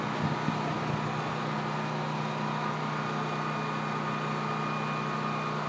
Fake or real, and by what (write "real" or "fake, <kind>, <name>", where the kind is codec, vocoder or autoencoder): real